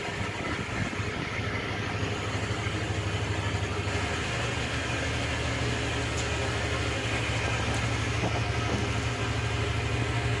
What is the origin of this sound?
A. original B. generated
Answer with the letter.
A